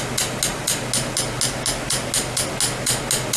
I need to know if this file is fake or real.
real